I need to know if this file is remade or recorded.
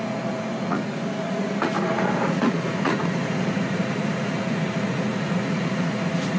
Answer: remade